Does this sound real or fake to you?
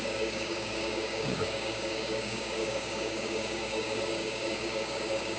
fake